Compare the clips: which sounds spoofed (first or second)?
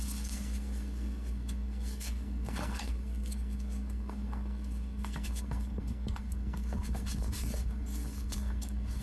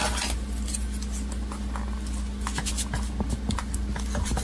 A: first